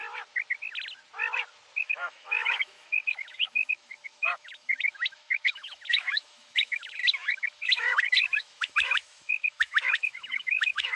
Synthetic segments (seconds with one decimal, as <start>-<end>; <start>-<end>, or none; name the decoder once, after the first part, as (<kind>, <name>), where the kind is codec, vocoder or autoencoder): 1.8-11.0 (autoencoder, DAC-VAE)